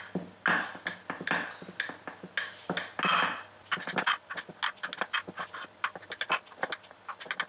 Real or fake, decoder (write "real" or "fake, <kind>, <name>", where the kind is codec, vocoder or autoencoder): real